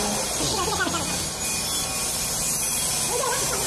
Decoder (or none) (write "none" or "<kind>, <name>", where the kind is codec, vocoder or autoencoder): none